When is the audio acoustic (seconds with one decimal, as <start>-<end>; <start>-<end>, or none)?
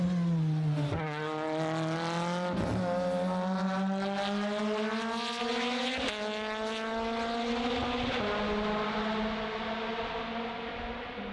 0.0-11.3